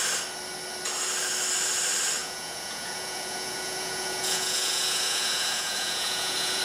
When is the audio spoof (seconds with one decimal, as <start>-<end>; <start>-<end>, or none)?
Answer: 2.2-6.6